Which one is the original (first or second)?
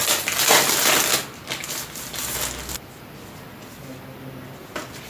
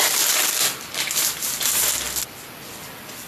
first